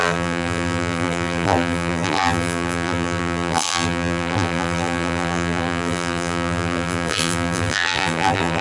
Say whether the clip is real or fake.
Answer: fake